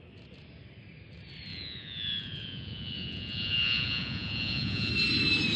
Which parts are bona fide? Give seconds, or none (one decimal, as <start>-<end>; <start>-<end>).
0.0-1.5; 4.9-5.6